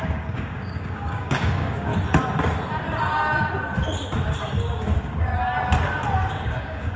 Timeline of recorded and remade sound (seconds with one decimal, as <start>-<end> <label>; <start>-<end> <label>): 0.0-1.9 remade; 1.9-4.7 recorded; 4.7-5.3 remade; 5.3-6.3 recorded; 6.3-7.0 remade